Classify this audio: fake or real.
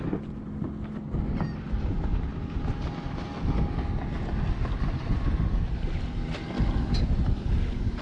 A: real